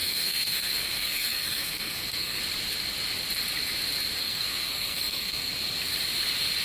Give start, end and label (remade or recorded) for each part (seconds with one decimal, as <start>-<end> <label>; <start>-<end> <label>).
0.0-2.4 remade; 2.4-4.2 recorded; 4.2-5.5 remade; 5.5-6.6 recorded